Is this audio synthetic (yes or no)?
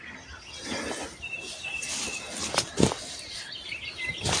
no